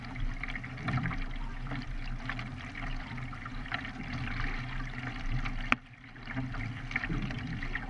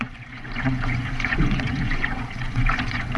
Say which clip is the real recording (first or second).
first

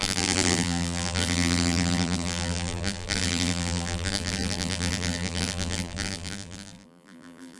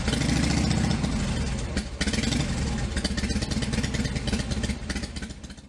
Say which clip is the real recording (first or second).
second